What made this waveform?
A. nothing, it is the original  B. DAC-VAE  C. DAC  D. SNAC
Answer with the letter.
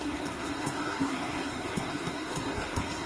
D